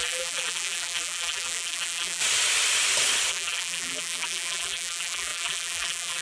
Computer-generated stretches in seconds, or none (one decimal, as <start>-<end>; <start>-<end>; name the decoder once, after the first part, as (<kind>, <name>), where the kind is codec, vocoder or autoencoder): 0.0-2.2 (vocoder, BigVGAN v2); 3.3-6.2